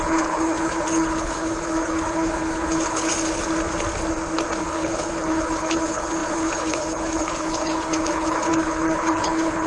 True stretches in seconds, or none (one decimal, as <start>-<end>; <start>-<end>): 3.1-4.6